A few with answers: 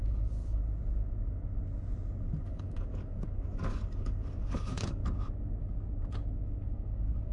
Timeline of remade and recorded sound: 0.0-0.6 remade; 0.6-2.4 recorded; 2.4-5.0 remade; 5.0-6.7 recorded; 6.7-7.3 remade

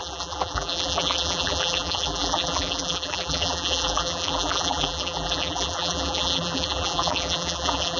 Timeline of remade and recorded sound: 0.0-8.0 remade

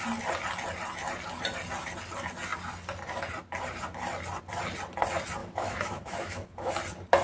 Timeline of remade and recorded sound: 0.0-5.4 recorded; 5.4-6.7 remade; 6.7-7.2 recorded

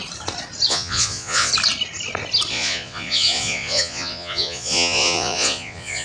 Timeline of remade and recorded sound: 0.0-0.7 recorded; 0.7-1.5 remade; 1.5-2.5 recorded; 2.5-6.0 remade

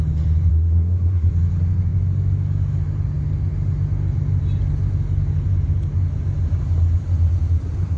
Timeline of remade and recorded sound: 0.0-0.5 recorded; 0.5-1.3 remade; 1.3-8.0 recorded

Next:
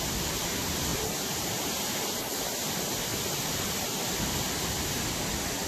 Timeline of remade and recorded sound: 0.0-0.9 recorded; 0.9-2.7 remade; 2.7-5.7 recorded

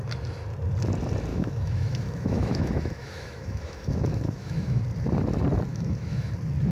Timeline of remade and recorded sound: 0.0-1.3 recorded; 1.3-4.8 remade; 4.8-5.7 recorded; 5.7-6.3 remade; 6.3-6.7 recorded